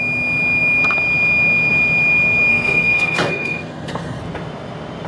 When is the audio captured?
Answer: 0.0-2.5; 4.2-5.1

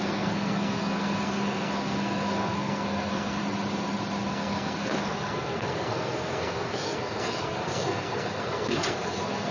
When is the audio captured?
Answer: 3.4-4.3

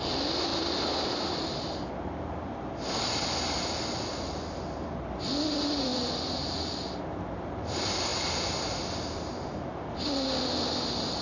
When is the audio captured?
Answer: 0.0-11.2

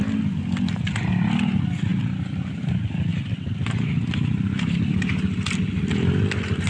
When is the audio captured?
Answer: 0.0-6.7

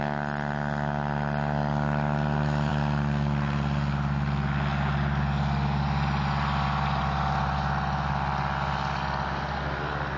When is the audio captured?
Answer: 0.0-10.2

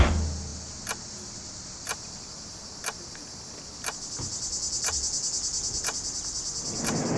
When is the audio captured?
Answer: 0.0-7.2